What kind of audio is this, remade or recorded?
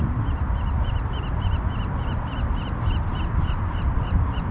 remade